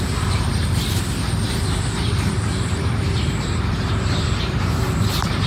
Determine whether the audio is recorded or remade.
remade